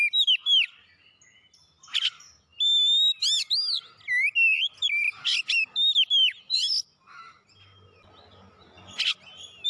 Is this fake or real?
real